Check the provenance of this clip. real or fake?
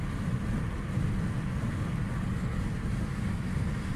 real